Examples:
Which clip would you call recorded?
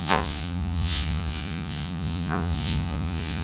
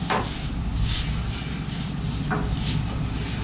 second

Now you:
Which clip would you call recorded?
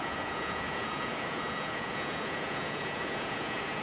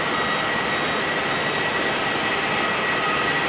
second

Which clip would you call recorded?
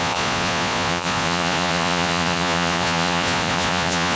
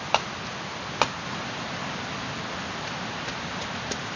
second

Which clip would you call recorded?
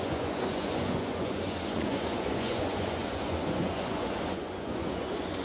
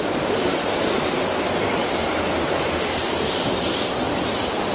second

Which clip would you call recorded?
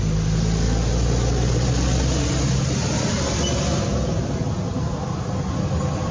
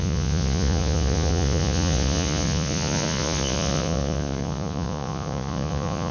first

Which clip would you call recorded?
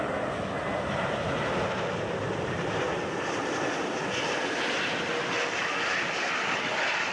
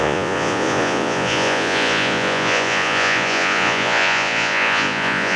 first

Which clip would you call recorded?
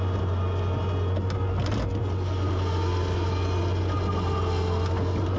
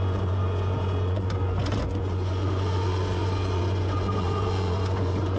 first